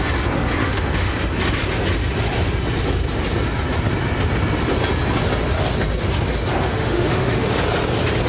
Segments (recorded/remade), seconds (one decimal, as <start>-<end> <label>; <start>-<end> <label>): 0.0-0.6 recorded; 0.6-1.1 remade; 1.1-6.5 recorded; 6.5-7.5 remade; 7.5-8.3 recorded